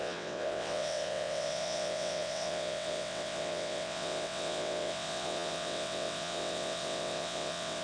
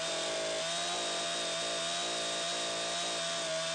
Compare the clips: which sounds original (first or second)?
second